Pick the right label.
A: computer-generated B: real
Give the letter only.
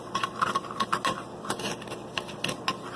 B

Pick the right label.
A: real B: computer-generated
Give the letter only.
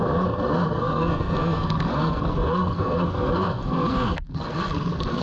B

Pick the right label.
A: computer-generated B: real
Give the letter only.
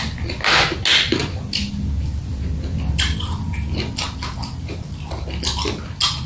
B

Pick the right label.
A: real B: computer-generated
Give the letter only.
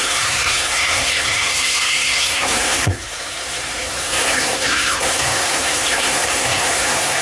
B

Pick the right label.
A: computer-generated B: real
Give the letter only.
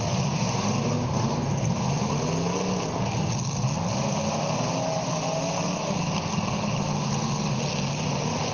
B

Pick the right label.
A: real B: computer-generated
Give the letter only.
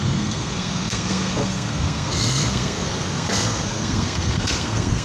B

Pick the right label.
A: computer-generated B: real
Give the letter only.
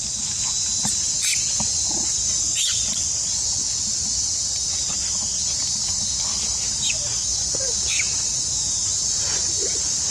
B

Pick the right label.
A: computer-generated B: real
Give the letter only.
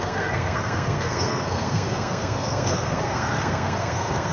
A